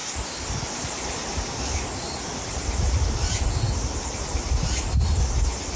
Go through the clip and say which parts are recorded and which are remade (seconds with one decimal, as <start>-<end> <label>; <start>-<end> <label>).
0.0-3.5 remade; 3.5-5.8 recorded